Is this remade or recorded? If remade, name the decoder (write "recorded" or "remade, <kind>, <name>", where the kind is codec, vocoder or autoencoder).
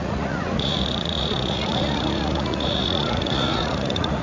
remade, vocoder, Vocos